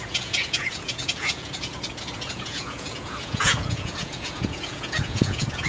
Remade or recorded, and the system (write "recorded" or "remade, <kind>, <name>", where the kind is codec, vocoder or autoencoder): remade, vocoder, Vocos